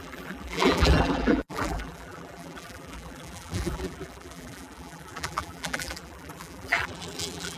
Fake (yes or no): yes